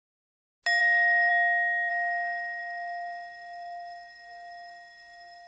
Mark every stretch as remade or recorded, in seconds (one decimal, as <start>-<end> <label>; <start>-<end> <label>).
0.0-0.8 recorded; 0.8-1.3 remade; 1.3-1.9 recorded; 1.9-5.5 remade